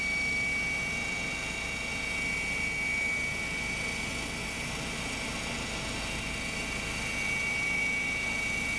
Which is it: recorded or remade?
recorded